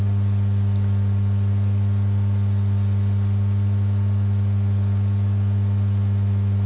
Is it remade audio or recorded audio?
recorded